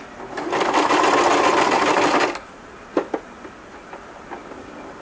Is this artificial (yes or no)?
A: no